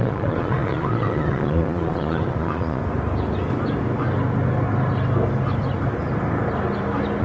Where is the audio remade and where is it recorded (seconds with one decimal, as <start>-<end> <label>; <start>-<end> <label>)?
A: 0.0-2.8 remade; 2.8-7.2 recorded